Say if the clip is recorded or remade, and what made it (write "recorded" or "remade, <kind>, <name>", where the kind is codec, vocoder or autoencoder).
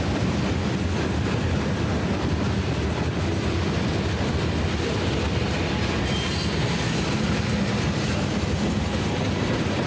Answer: recorded